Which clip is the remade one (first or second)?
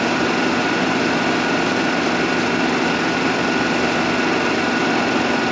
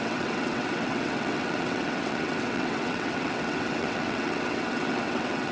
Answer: second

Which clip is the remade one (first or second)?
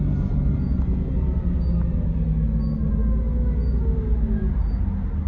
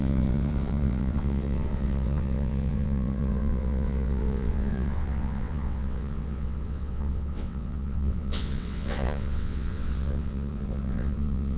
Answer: second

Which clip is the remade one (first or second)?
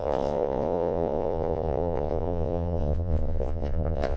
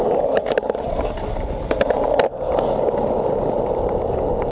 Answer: first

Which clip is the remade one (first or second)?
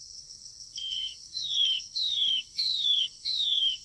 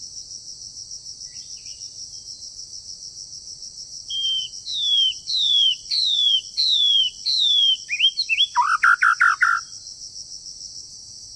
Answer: first